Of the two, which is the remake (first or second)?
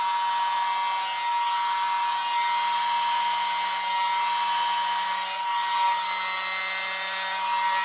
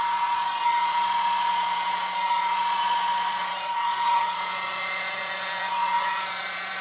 second